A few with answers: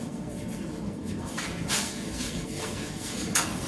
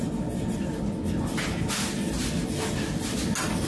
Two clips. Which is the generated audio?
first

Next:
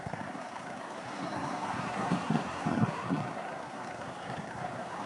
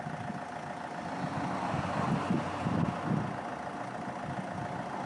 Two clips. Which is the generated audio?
first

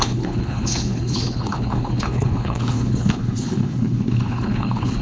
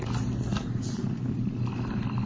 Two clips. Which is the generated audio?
first